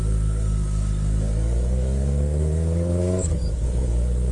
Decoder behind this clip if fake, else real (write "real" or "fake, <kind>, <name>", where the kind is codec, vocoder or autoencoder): fake, codec, DAC